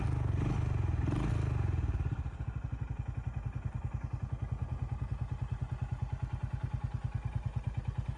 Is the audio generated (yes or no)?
no